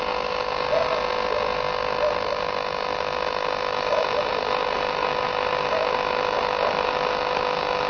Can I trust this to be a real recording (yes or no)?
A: yes